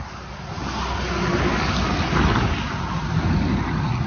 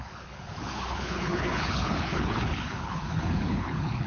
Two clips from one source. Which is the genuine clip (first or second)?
first